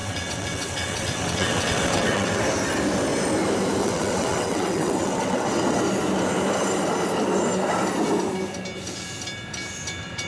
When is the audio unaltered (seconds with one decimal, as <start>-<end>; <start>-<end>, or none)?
2.4-3.8; 5.8-10.3